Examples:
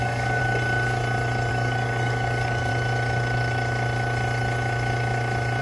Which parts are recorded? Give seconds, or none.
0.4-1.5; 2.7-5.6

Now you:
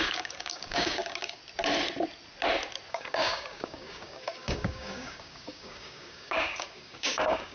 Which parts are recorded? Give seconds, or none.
1.4-2.9

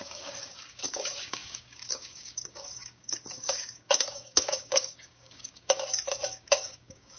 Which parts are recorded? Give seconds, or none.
none

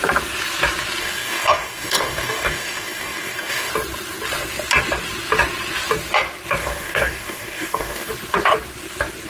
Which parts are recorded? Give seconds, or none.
0.0-1.0; 3.7-6.6; 8.1-9.3

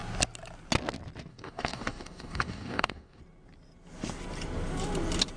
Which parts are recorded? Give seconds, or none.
0.0-1.3; 3.2-5.4

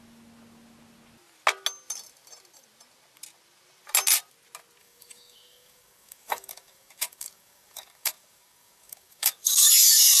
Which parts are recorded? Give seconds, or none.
0.0-4.8

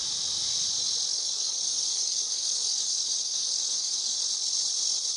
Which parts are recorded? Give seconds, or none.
0.0-1.1; 4.2-5.2